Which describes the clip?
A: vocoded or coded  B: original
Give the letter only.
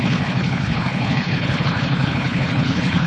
A